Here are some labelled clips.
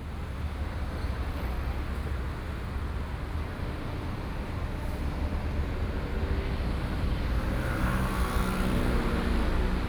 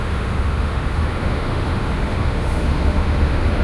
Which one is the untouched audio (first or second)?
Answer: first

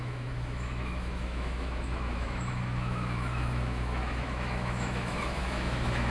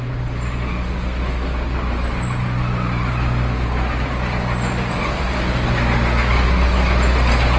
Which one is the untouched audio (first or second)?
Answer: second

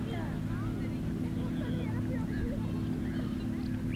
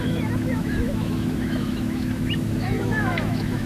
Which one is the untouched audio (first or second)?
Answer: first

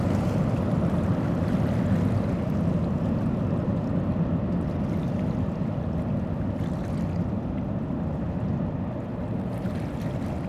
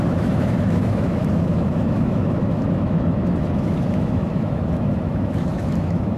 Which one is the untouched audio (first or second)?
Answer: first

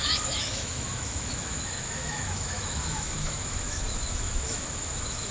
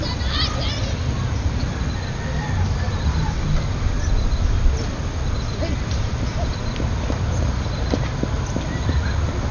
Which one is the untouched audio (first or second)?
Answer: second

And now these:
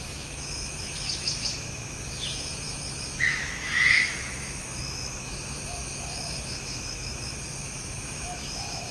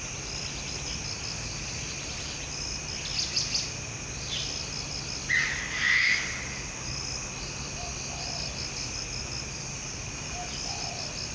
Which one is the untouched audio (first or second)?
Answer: second